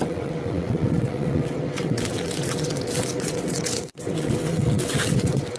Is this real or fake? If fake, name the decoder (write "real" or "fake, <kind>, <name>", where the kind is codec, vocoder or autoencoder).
fake, vocoder, WaveNeXt